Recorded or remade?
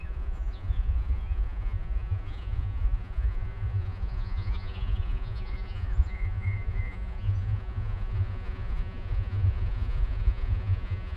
remade